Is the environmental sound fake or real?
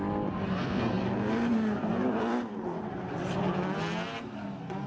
real